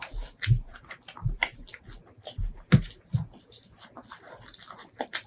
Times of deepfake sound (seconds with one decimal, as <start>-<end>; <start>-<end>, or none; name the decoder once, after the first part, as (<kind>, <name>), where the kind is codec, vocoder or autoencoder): none